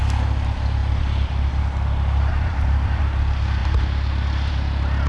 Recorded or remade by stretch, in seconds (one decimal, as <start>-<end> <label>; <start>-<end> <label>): 0.0-2.3 recorded; 2.3-3.0 remade; 3.0-5.1 recorded